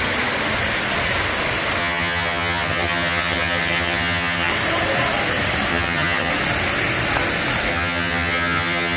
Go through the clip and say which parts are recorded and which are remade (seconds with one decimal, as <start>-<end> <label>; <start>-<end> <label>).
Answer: 0.0-1.8 recorded; 1.8-4.5 remade; 4.5-5.7 recorded; 5.7-6.3 remade; 6.3-7.7 recorded; 7.7-9.0 remade